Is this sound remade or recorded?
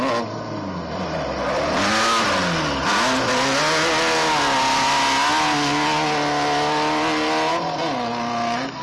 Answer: recorded